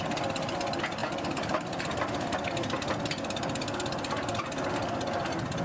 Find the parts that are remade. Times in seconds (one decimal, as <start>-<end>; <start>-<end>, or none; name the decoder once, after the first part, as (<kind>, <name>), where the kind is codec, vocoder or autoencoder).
none